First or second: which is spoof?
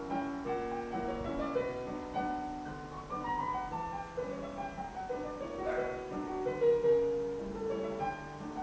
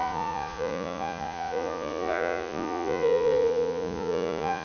second